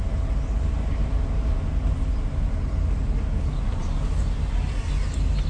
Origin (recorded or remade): recorded